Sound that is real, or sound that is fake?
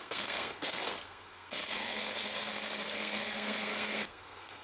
fake